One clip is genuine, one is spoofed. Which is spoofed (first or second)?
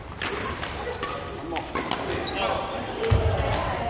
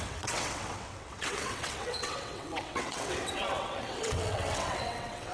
second